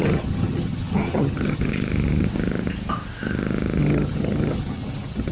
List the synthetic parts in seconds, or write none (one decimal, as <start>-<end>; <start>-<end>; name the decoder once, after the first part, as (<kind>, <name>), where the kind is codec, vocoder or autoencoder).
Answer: 0.0-1.7 (vocoder, HiFi-GAN); 3.8-5.3